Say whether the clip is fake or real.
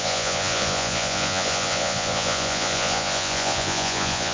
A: fake